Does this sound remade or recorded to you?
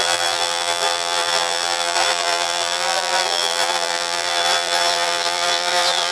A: remade